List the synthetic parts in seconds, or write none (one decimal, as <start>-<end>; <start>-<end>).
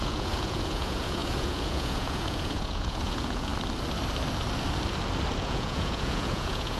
0.0-3.5; 5.4-6.8